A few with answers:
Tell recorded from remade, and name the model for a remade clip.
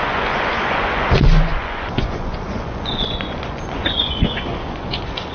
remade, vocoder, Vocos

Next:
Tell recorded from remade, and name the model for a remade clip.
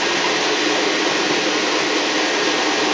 recorded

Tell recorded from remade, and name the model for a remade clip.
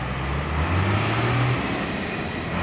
recorded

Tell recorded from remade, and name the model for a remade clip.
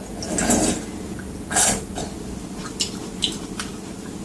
recorded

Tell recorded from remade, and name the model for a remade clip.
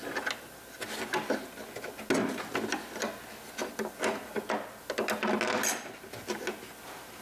recorded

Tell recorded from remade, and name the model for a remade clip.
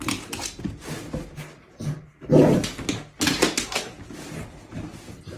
recorded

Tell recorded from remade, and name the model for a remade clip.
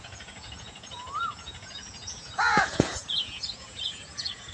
remade, vocoder, Vocos